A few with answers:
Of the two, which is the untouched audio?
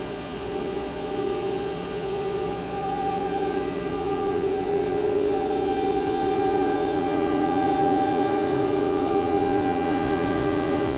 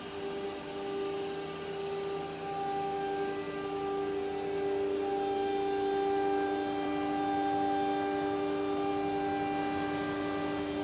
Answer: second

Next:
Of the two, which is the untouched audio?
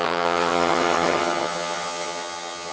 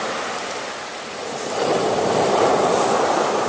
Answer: second